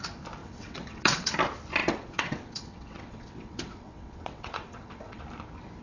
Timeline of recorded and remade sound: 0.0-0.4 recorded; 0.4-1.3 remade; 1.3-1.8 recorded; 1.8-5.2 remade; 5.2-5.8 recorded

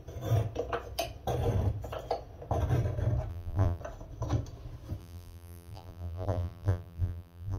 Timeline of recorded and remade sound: 0.0-3.3 recorded; 3.3-3.8 remade; 3.8-5.0 recorded; 5.0-7.6 remade

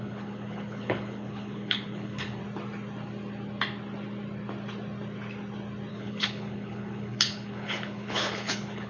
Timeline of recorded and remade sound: 0.0-2.4 remade; 2.4-5.9 recorded; 5.9-8.9 remade

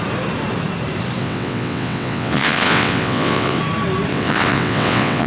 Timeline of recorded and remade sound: 0.0-1.2 recorded; 1.2-3.6 remade; 3.6-4.1 recorded; 4.1-5.3 remade

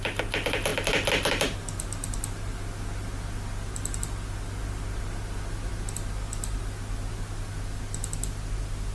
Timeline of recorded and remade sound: 0.0-8.9 recorded

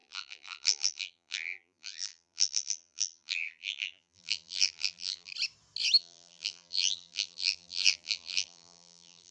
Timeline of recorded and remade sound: 0.0-5.3 remade; 5.3-6.0 recorded; 6.0-9.3 remade

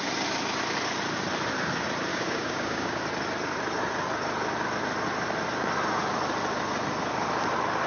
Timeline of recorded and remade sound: 0.0-2.1 recorded; 2.1-3.0 remade; 3.0-7.9 recorded

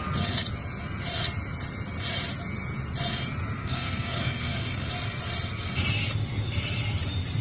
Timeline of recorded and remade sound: 0.0-3.6 recorded; 3.6-4.9 remade; 4.9-7.4 recorded